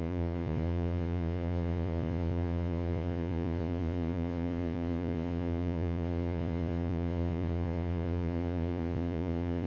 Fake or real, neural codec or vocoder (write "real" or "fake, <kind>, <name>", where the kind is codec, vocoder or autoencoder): fake, vocoder, Vocos